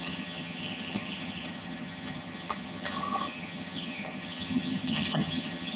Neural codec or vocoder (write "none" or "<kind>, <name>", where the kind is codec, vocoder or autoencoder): vocoder, HiFi-GAN